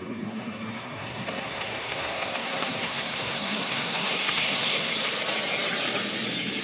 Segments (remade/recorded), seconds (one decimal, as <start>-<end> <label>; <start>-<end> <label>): 0.0-4.9 remade; 4.9-6.6 recorded